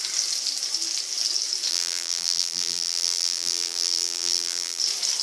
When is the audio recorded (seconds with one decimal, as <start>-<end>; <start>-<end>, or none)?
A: 0.0-1.7; 4.8-5.2